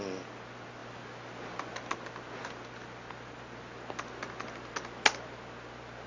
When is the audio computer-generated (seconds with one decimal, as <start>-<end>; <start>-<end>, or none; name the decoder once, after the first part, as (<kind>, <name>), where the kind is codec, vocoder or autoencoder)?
none